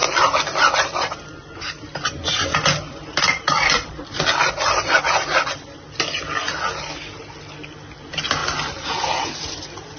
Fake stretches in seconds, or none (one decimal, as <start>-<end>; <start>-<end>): 0.0-4.5; 8.4-10.0